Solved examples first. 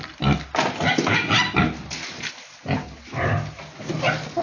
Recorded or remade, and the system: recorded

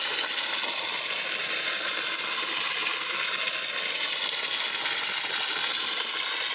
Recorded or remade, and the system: recorded